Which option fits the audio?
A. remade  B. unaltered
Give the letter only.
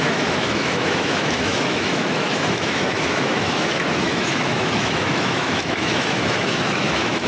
A